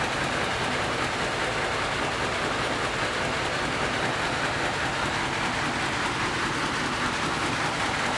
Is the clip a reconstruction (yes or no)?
no